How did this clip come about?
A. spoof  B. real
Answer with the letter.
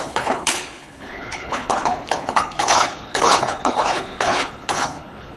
A